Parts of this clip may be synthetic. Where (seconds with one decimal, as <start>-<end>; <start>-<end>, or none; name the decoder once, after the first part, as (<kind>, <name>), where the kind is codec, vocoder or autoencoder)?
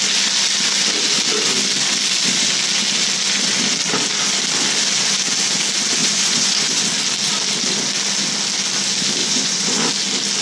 6.0-6.8 (vocoder, Vocos); 9.2-9.9